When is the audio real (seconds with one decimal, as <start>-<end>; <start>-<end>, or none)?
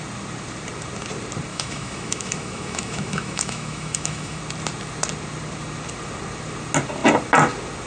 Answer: 0.0-1.5; 4.4-7.9